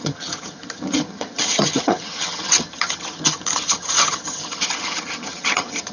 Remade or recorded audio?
remade